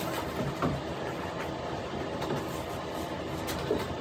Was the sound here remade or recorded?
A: recorded